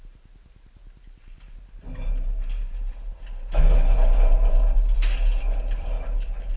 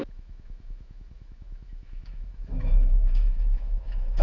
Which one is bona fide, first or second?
first